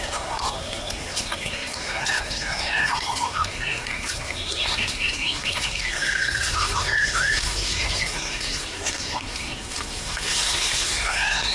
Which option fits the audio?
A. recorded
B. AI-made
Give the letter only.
B